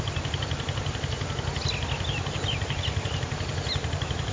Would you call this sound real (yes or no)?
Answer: yes